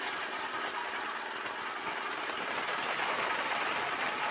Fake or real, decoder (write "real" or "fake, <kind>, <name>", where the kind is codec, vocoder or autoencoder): real